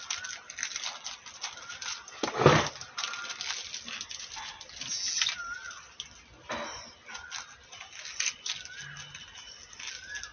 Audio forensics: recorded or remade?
recorded